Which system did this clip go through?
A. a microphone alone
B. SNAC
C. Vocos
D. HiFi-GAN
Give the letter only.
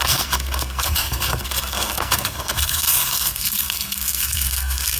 B